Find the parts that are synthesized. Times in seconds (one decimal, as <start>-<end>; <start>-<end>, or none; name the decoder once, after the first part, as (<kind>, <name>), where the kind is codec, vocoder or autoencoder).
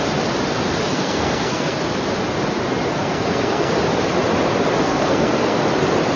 0.9-1.8 (codec, SNAC); 2.9-3.7; 4.8-5.6